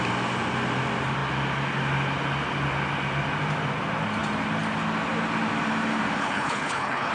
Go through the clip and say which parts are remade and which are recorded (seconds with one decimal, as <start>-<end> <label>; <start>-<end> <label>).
0.0-6.2 recorded; 6.2-7.1 remade